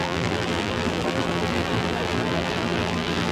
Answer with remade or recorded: remade